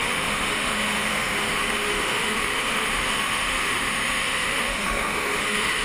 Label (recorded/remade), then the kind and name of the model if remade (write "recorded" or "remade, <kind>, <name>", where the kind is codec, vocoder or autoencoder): remade, autoencoder, DAC-VAE